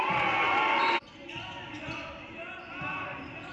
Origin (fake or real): real